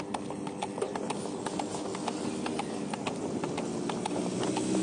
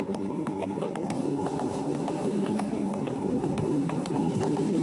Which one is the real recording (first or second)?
first